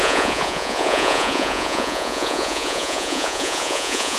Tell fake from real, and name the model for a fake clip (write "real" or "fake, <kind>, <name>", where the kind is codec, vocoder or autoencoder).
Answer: fake, vocoder, Vocos